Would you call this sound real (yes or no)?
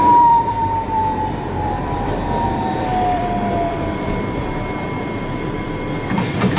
no